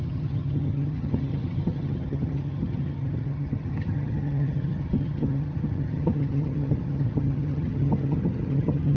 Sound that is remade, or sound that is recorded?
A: remade